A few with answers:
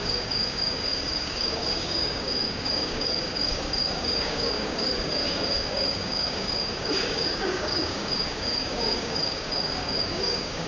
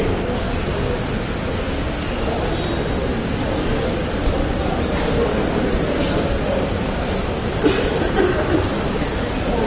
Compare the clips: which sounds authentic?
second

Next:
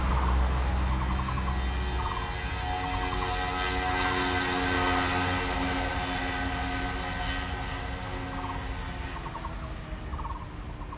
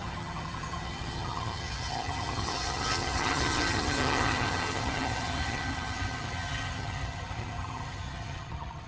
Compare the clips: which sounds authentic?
first